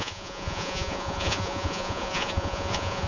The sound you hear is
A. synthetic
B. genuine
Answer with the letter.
A